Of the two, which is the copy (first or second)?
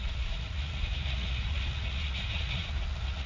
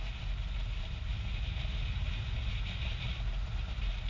first